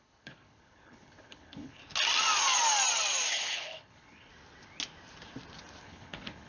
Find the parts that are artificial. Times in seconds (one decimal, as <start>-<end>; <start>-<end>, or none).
0.0-1.8; 3.3-4.3; 5.8-6.5